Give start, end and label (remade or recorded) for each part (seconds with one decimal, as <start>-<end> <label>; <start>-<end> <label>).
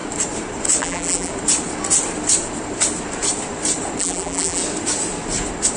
0.0-0.8 recorded; 0.8-1.3 remade; 1.3-4.0 recorded; 4.0-4.6 remade; 4.6-5.8 recorded